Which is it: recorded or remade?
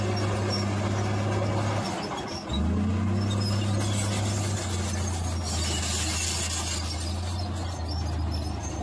recorded